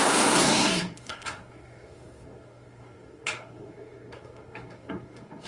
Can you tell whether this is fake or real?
fake